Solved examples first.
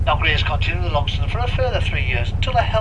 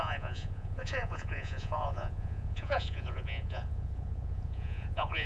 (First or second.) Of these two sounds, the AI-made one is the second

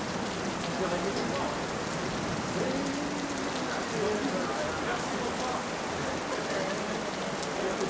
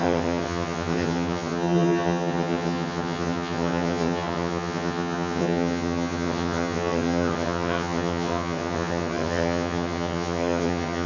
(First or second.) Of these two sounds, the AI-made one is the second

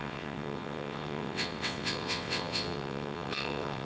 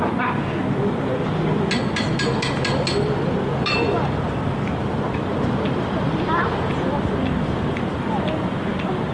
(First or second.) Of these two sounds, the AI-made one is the first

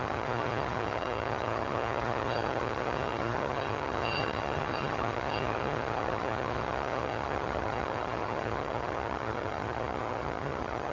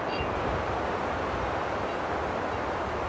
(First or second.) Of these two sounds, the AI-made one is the first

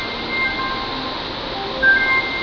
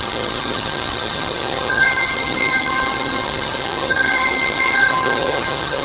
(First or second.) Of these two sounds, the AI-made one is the second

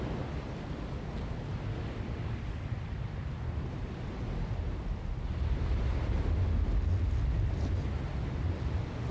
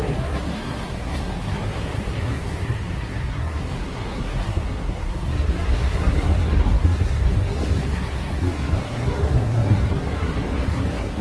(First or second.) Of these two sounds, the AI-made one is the second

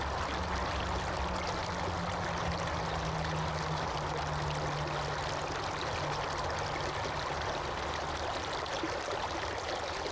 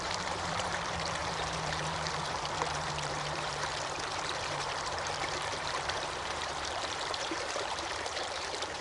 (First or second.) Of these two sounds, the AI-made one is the second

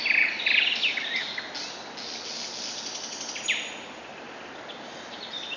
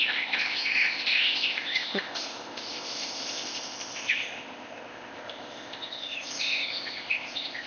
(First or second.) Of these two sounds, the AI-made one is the second